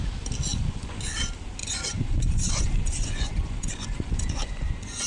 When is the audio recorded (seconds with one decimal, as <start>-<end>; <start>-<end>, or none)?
0.0-0.5; 1.0-1.6